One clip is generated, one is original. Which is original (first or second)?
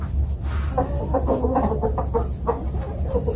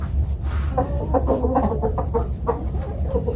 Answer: first